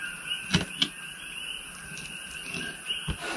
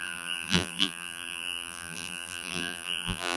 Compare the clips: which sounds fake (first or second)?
second